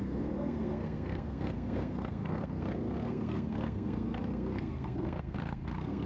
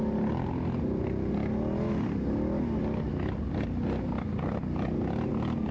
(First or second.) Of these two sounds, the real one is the second